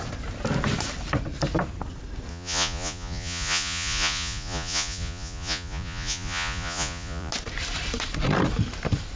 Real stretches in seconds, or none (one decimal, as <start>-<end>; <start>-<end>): 0.0-2.3; 7.3-9.2